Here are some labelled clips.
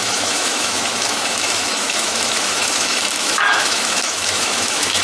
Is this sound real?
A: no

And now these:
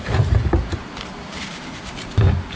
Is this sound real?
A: yes